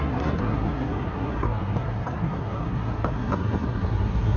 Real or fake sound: fake